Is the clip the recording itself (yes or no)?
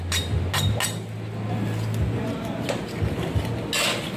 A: yes